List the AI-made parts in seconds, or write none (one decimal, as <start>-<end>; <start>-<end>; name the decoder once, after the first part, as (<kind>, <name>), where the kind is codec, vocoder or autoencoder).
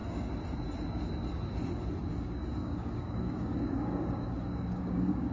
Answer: 2.1-5.3 (codec, DAC)